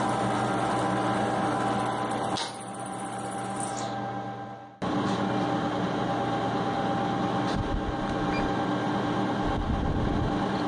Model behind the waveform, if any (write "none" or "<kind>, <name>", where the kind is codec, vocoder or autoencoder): none